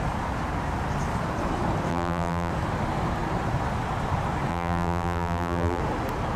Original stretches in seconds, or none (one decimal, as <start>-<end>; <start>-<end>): 0.0-1.9; 2.5-4.5; 5.8-6.4